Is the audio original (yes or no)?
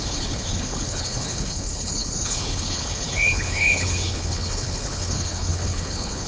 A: no